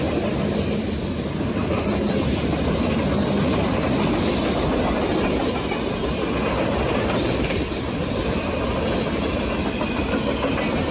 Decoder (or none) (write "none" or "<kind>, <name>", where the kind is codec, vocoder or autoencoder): none